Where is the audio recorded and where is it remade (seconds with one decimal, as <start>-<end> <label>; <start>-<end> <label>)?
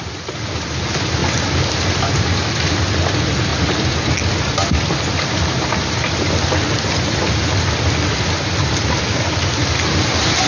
0.0-10.5 recorded